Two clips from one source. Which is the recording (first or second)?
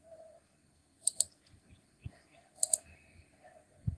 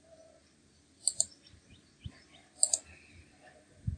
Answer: second